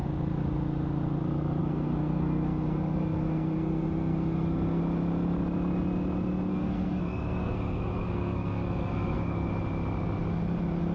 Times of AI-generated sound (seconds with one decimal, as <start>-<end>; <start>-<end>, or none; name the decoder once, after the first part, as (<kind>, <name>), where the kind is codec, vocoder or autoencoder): 1.6-4.8 (codec, SNAC); 6.5-9.5